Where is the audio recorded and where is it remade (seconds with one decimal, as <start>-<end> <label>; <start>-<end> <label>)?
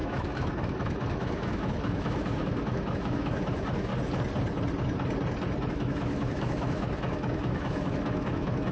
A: 0.0-3.9 remade; 3.9-5.7 recorded; 5.7-8.7 remade